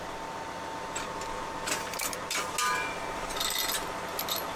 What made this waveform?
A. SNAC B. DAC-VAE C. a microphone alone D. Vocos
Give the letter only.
C